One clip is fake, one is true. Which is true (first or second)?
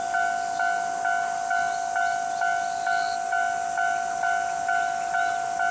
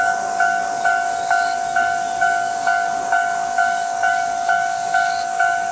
first